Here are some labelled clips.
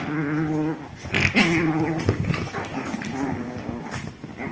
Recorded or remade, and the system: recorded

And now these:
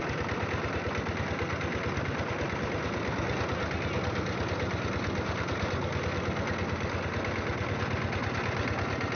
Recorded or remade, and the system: recorded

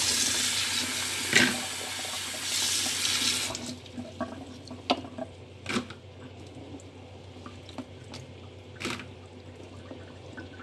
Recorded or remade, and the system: recorded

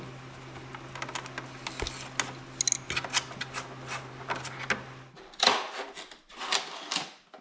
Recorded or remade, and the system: recorded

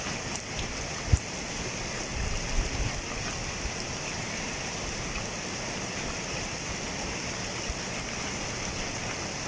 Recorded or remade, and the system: recorded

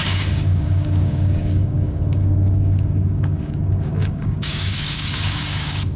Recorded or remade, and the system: remade, codec, DAC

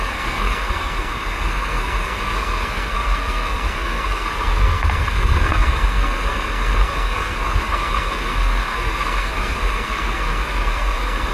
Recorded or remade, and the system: remade, codec, SNAC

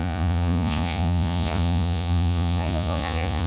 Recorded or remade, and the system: remade, vocoder, Vocos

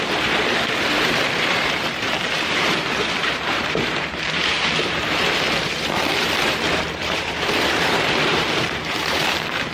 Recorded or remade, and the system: remade, vocoder, BigVGAN v2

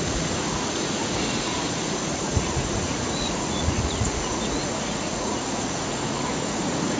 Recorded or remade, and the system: remade, vocoder, Vocos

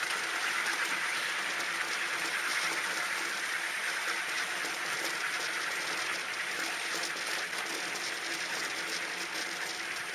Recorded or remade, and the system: recorded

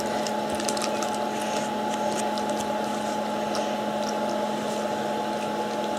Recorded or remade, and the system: recorded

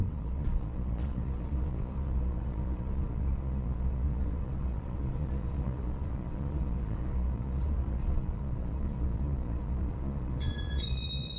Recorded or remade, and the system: remade, vocoder, Vocos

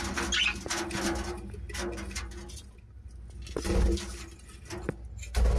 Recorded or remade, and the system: recorded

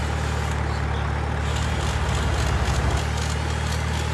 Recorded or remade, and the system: recorded